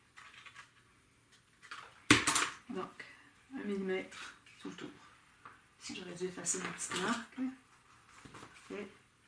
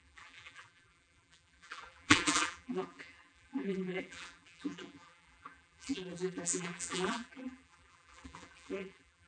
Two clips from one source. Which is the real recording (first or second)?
first